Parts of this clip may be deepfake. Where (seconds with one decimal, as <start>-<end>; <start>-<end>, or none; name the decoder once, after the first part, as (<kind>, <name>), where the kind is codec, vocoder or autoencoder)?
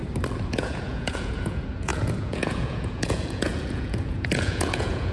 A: 0.5-5.1 (vocoder, Vocos)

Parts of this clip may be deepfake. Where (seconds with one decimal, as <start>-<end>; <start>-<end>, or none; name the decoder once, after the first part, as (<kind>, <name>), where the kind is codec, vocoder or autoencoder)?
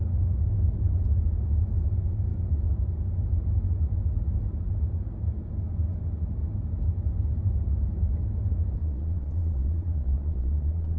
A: 8.8-11.0 (vocoder, Vocos)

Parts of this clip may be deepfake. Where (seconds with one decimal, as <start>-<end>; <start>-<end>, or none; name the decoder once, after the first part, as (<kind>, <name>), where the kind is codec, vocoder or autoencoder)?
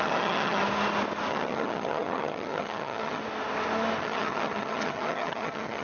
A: 0.0-0.6 (vocoder, HiFi-GAN); 1.3-3.2; 4.0-5.8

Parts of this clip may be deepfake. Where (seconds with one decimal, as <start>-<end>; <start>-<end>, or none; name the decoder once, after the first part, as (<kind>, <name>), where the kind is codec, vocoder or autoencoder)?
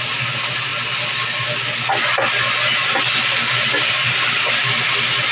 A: none